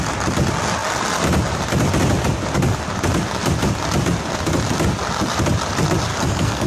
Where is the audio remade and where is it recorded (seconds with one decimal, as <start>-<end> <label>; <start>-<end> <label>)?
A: 0.0-6.1 recorded; 6.1-6.7 remade